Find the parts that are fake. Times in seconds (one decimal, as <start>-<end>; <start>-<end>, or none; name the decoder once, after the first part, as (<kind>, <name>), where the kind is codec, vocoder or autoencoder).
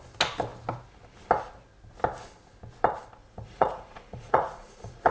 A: 3.2-5.1 (vocoder, Vocos)